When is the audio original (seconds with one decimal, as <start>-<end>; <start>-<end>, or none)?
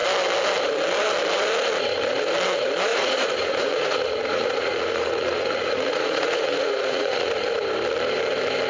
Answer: 0.0-2.9; 7.3-8.7